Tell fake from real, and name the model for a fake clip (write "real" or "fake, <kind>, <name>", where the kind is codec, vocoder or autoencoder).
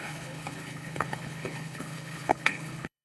fake, codec, HILCodec